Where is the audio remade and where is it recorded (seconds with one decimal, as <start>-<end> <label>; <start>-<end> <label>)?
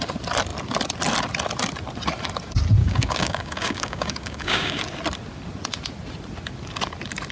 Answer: 0.0-2.8 recorded; 2.8-4.8 remade; 4.8-7.3 recorded